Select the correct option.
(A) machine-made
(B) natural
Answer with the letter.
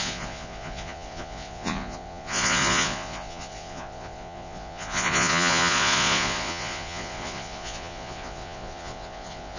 A